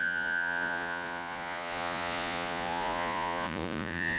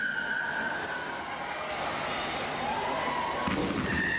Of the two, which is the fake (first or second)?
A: first